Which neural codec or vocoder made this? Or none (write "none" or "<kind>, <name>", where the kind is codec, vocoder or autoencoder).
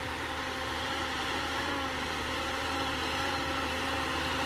vocoder, BigVGAN v2